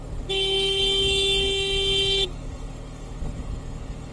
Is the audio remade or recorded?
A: remade